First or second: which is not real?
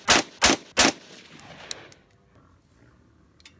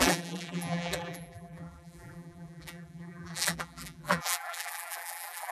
second